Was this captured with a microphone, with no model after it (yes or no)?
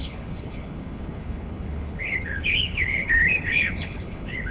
no